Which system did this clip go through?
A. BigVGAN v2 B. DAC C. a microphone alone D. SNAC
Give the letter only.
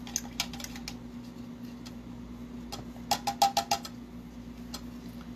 C